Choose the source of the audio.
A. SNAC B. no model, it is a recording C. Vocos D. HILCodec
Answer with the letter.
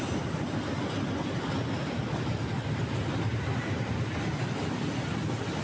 B